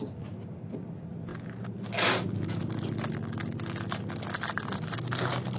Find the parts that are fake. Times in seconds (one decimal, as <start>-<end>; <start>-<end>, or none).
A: none